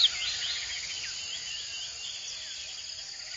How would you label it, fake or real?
real